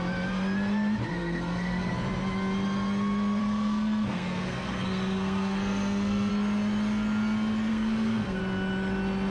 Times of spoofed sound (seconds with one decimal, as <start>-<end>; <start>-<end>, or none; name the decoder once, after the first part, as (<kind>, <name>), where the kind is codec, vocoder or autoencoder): 1.1-1.9 (codec, SNAC); 3.4-6.3; 7.7-8.4